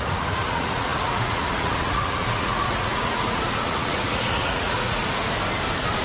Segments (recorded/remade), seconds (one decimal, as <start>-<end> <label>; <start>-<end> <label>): 0.0-5.0 remade; 5.0-6.0 recorded